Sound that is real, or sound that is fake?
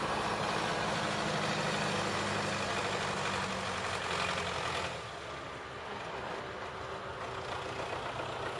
real